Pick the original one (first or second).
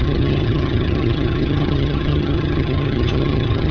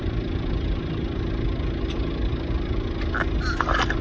second